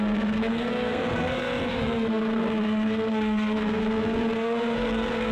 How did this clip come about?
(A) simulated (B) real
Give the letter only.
A